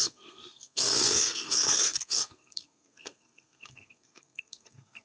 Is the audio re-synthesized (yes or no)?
yes